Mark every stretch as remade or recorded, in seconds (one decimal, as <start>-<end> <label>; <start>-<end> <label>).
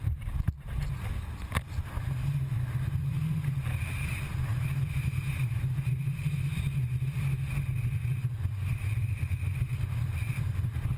0.0-4.5 recorded; 4.5-5.7 remade; 5.7-11.0 recorded